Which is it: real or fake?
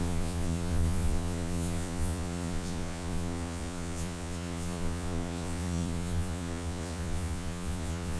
fake